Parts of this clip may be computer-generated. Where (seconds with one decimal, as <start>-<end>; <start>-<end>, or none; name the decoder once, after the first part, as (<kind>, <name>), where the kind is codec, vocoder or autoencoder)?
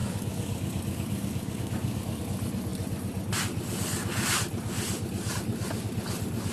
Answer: 0.0-2.2 (codec, DAC)